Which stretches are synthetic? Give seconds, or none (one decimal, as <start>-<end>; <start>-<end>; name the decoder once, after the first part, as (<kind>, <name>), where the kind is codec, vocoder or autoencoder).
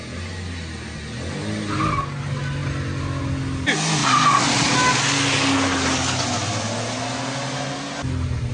none